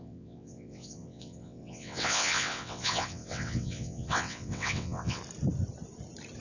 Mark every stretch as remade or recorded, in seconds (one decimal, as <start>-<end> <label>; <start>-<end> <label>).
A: 0.0-5.2 remade; 5.2-6.4 recorded